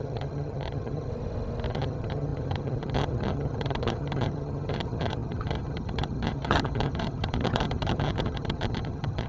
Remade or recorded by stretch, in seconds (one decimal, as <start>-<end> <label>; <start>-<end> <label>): 0.0-1.1 remade; 1.1-1.7 recorded; 1.7-9.3 remade